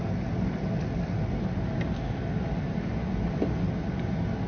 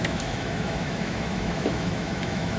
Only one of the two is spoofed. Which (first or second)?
second